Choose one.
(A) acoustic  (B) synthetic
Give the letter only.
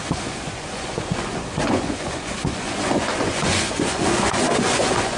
B